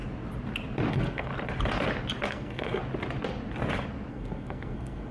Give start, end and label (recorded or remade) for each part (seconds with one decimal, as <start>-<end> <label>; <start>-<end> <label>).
0.0-0.9 recorded; 0.9-1.3 remade; 1.3-2.3 recorded; 2.3-2.8 remade; 2.8-4.1 recorded; 4.1-5.1 remade